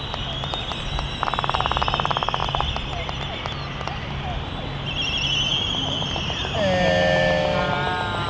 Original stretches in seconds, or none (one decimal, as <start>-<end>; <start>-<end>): 0.0-8.3